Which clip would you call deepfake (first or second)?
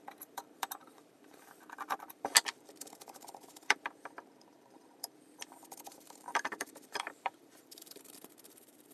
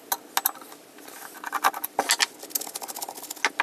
first